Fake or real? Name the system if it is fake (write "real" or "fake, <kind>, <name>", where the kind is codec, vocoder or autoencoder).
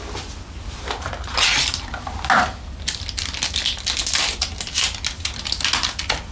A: real